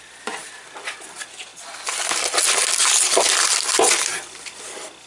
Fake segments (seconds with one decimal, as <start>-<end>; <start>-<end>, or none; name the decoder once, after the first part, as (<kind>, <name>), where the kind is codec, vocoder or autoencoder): none